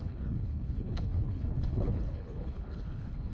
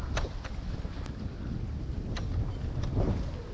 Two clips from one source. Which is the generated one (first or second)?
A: first